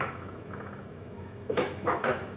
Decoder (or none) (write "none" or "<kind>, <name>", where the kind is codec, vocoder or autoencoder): autoencoder, DAC-VAE